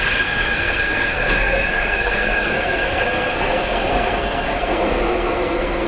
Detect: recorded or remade remade